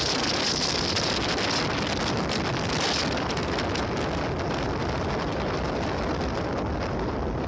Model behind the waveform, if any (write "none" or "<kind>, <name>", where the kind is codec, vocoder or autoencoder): none